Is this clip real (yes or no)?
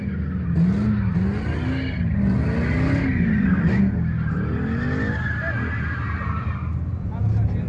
yes